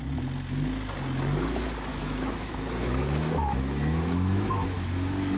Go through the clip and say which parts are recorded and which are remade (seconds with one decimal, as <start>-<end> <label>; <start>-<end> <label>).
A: 0.0-1.9 recorded; 1.9-5.4 remade